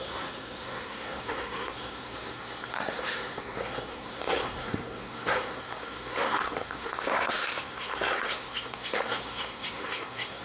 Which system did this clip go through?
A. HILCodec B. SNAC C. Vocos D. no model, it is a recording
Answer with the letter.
B